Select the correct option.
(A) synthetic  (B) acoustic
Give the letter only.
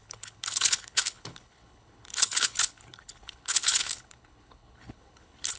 A